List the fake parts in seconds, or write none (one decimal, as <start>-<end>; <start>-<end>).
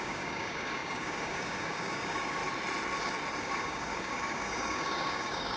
0.0-2.4; 3.4-5.6